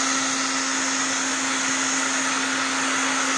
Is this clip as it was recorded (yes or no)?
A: yes